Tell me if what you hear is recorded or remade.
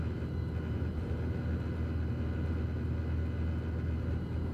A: recorded